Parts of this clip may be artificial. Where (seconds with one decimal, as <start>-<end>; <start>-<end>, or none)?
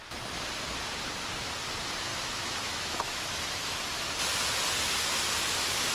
2.1-3.8